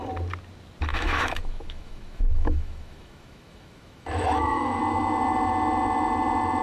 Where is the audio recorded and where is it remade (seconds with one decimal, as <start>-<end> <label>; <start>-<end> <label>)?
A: 0.0-0.9 recorded; 0.9-4.8 remade; 4.8-6.6 recorded